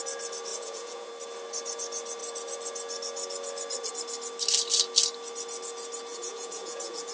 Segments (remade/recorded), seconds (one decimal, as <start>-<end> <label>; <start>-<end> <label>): 0.0-0.5 recorded; 0.5-1.1 remade; 1.1-6.1 recorded; 6.1-7.1 remade